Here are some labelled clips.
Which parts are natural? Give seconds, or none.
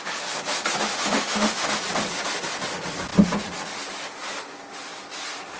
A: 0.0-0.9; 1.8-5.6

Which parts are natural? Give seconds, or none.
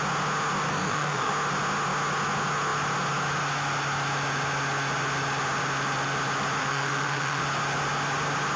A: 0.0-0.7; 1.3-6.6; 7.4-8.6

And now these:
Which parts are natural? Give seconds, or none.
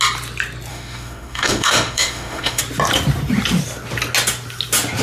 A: 0.0-0.7; 2.6-5.0